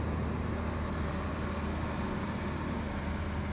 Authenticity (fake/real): real